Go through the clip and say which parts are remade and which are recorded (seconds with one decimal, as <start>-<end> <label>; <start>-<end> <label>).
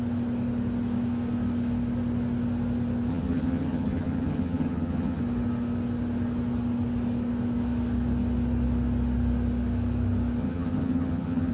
0.0-3.1 recorded; 3.1-5.2 remade; 5.2-10.4 recorded; 10.4-11.5 remade